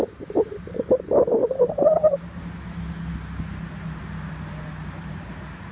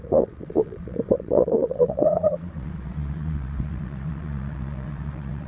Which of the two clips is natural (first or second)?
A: first